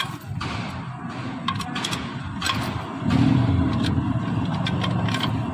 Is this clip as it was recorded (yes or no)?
yes